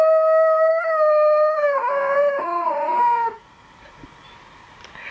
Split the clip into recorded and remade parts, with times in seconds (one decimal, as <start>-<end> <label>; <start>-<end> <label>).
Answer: 0.0-0.7 recorded; 0.7-3.4 remade; 3.4-5.1 recorded